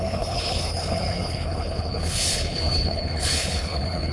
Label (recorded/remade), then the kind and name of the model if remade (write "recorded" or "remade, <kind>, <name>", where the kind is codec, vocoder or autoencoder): remade, codec, HILCodec